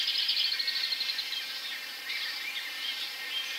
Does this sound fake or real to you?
real